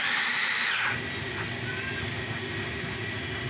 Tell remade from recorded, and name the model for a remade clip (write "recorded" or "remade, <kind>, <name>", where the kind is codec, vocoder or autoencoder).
recorded